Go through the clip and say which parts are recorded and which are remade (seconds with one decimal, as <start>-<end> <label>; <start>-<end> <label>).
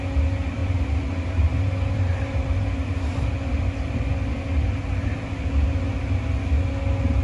0.0-0.6 recorded; 0.6-3.3 remade; 3.3-7.2 recorded